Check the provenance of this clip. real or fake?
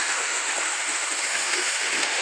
fake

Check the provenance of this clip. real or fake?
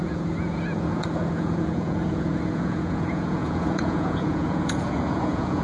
fake